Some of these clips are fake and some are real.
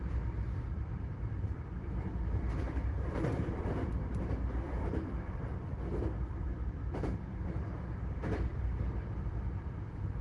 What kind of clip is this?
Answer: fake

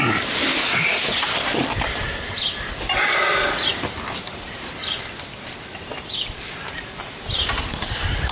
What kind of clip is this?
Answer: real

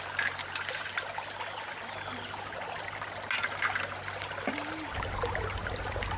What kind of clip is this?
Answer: real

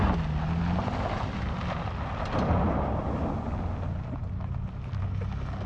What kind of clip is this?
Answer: real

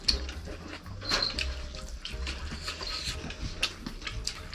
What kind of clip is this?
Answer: real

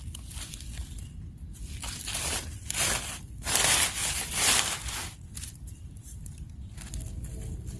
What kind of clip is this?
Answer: real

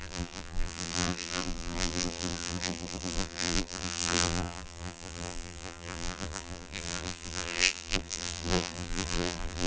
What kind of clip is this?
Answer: fake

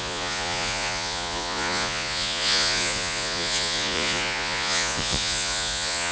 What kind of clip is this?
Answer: fake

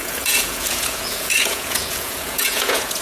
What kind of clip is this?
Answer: fake